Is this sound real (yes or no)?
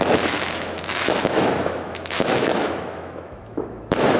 no